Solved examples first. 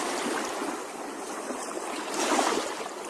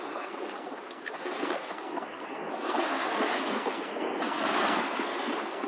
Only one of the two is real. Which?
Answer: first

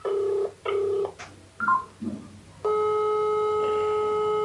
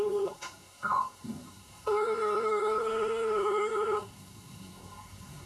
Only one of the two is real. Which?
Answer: first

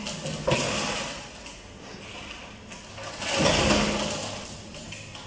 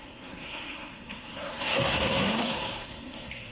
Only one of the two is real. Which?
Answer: first